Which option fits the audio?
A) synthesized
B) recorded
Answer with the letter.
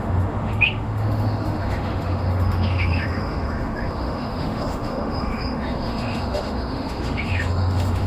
A